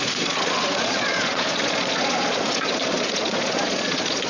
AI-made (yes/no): yes